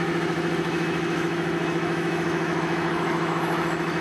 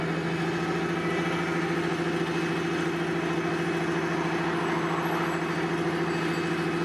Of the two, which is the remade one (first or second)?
first